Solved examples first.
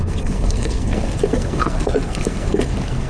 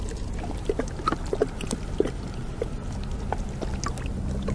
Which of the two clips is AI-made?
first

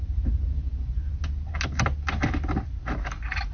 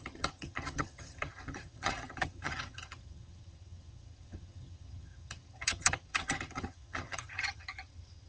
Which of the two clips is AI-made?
second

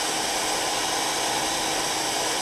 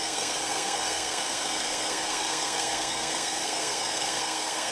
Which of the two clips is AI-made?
second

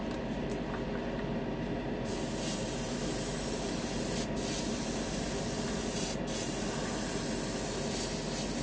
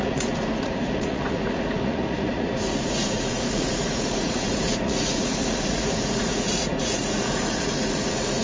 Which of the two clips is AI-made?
second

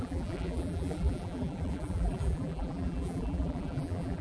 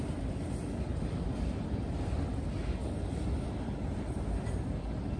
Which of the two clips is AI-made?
first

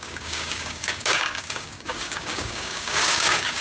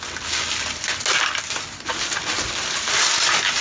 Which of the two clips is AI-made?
first